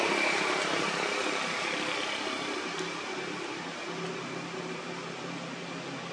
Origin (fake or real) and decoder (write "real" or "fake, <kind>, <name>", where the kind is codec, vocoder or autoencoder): real